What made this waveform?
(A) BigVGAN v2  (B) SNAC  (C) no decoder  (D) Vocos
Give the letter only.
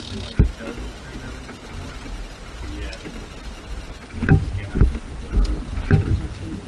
C